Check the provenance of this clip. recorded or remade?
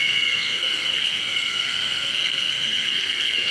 remade